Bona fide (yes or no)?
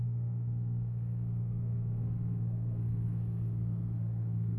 no